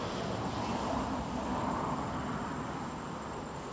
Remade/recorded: remade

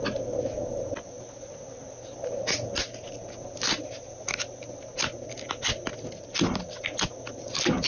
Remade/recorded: recorded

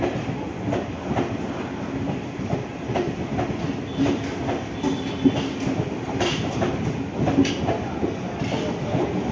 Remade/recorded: recorded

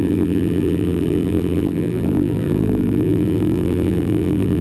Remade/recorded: remade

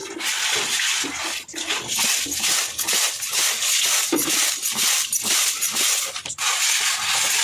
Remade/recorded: recorded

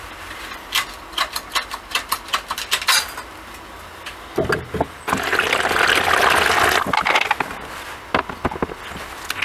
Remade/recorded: recorded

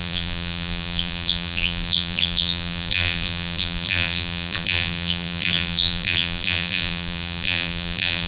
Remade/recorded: remade